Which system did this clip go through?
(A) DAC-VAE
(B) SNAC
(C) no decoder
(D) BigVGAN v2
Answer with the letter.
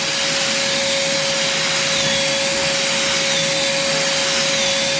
C